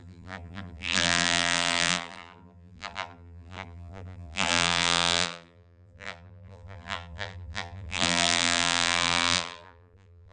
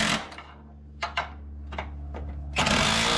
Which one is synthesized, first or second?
first